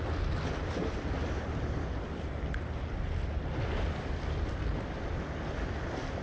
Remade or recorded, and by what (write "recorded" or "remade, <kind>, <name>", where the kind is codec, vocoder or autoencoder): recorded